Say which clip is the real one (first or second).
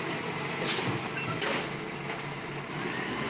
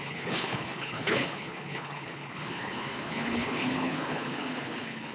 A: first